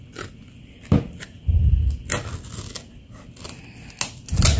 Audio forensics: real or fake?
real